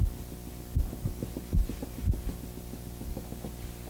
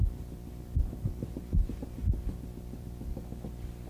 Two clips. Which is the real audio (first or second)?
first